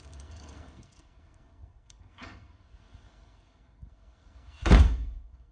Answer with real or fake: fake